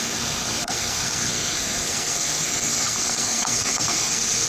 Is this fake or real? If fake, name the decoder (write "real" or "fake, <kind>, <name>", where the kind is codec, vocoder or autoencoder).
fake, codec, SNAC